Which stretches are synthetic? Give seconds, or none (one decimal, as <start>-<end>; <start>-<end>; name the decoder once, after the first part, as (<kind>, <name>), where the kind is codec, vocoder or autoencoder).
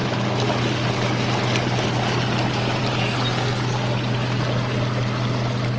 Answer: none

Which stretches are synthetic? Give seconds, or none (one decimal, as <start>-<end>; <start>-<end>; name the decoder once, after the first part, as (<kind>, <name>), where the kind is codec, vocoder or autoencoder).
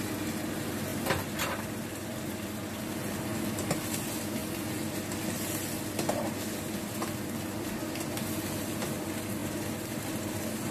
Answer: none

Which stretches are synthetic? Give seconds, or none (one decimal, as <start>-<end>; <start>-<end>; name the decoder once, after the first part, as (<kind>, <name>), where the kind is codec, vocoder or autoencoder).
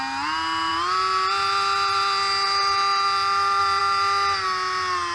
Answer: none